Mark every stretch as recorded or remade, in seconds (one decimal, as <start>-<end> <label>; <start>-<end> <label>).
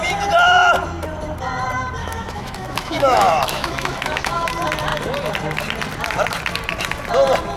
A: 0.0-2.0 recorded; 2.0-4.5 remade; 4.5-7.6 recorded